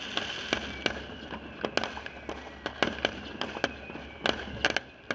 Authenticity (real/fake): real